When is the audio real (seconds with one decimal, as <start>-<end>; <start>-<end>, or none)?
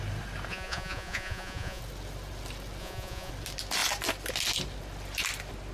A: 0.0-0.5; 1.8-2.8; 3.3-5.7